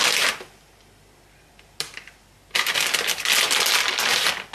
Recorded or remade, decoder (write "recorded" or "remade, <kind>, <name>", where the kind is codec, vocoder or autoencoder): recorded